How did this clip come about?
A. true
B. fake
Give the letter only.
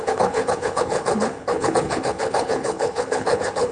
B